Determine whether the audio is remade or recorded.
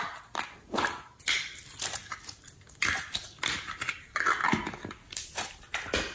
recorded